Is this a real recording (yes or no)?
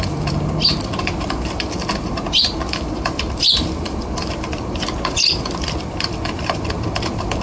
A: no